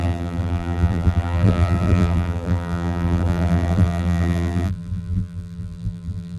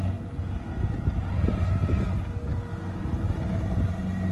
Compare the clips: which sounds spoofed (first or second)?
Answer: first